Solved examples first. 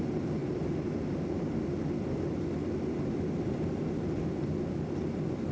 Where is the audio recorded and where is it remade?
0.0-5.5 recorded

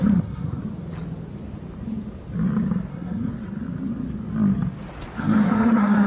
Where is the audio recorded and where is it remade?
0.0-0.6 remade; 0.6-2.9 recorded; 2.9-3.3 remade; 3.3-5.2 recorded; 5.2-6.1 remade

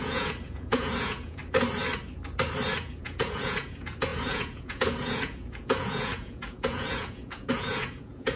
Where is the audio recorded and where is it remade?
0.0-1.4 remade; 1.4-2.8 recorded; 2.8-8.4 remade

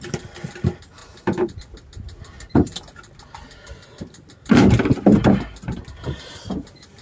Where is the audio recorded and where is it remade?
0.0-1.0 recorded; 1.0-1.6 remade; 1.6-7.0 recorded